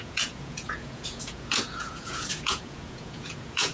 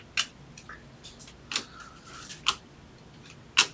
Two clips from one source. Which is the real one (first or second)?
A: second